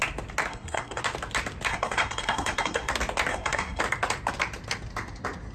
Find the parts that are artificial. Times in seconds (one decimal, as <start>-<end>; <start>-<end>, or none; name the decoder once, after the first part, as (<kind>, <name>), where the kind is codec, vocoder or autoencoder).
0.5-1.0 (codec, SNAC); 1.7-2.9; 3.3-3.8